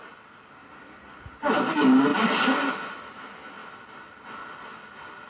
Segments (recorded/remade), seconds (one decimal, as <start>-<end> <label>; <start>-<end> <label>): 0.0-2.1 recorded; 2.1-2.7 remade; 2.7-5.3 recorded